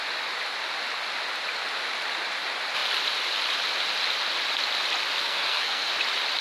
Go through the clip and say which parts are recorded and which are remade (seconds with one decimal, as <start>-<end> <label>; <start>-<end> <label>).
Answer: 0.0-5.2 recorded; 5.2-5.9 remade; 5.9-6.4 recorded